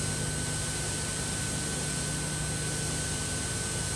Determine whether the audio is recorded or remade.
recorded